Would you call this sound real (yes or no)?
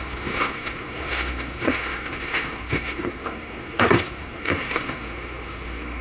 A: no